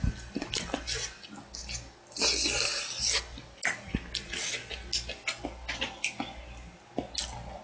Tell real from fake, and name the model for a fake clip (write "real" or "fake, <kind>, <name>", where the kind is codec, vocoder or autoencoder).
real